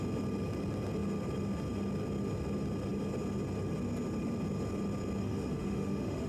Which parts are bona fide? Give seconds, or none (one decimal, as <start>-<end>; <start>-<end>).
0.0-5.2